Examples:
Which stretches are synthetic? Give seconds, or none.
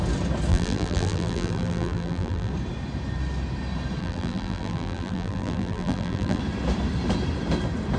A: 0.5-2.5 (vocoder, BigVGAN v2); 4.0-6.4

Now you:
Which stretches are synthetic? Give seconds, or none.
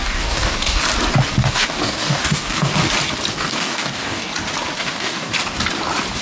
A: 0.0-0.8 (codec, DAC); 1.3-2.7; 3.3-4.3; 4.8-5.3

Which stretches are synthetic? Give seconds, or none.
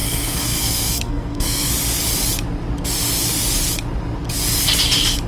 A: 0.0-1.7 (codec, SNAC)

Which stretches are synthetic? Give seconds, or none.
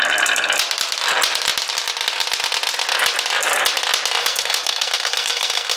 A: 4.2-5.8 (codec, SNAC)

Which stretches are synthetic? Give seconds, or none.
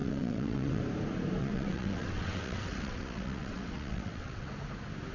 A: 0.0-0.8 (vocoder, WaveNeXt); 1.4-4.5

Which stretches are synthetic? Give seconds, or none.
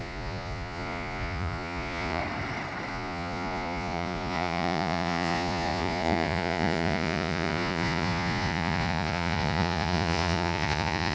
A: 0.0-2.2 (vocoder, Vocos); 2.9-11.1